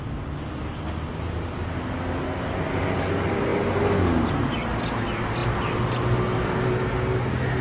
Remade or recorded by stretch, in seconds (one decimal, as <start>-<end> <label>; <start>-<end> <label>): 0.0-7.6 recorded